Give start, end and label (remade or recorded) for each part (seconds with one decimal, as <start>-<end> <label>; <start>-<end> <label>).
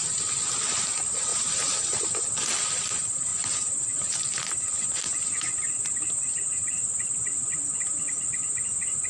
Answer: 0.0-9.1 recorded